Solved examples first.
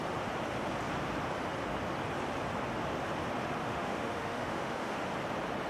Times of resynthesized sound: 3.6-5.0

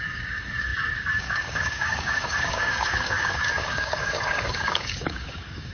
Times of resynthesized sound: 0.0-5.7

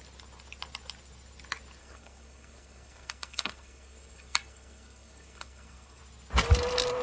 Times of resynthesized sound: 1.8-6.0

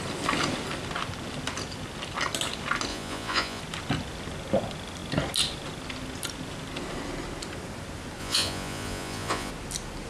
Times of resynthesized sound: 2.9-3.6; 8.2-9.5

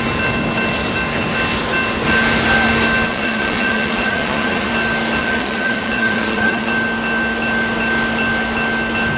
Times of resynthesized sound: 3.1-4.7; 5.2-6.7

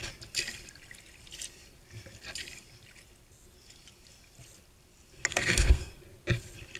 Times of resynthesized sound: 5.3-5.9

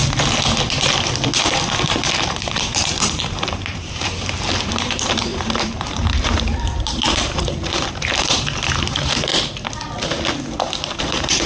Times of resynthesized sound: 2.1-9.3; 11.0-11.5

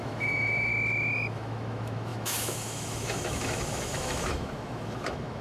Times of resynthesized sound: 0.0-0.7; 1.3-5.4